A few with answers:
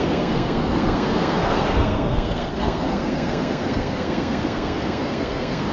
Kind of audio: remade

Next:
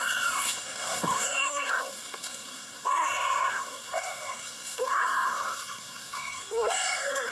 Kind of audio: remade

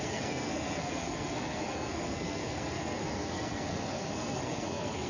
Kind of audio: remade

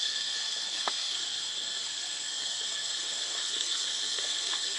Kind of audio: remade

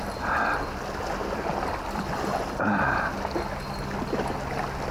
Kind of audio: recorded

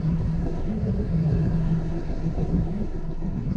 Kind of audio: remade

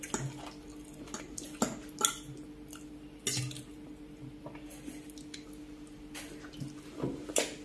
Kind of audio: recorded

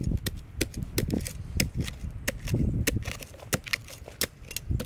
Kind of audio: recorded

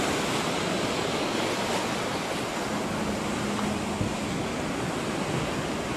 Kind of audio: recorded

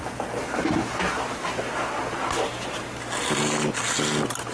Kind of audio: recorded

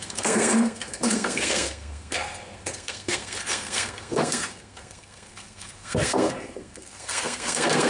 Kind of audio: remade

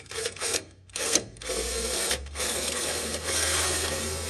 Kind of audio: remade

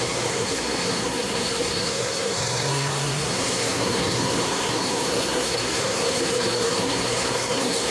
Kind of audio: remade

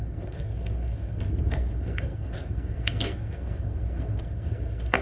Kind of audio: remade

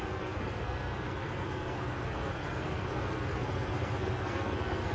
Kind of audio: remade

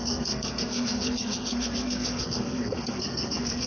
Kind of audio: remade